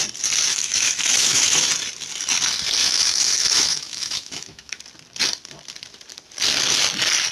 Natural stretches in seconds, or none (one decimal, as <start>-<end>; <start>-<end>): 0.0-0.5; 1.7-2.8; 4.8-7.3